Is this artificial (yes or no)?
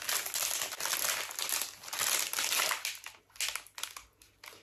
no